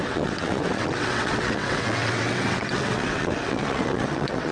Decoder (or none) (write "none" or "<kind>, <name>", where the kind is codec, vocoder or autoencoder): vocoder, WaveNeXt